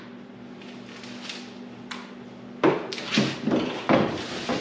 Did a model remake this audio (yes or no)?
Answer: no